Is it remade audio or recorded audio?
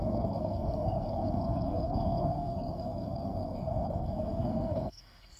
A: remade